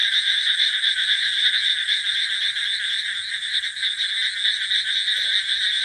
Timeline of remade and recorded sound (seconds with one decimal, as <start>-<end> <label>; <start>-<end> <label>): 0.0-2.0 remade; 2.0-5.8 recorded